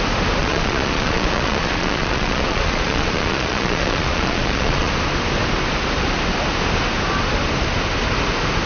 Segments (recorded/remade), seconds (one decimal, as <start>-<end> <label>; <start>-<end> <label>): 0.0-0.4 recorded; 0.4-4.9 remade; 4.9-8.7 recorded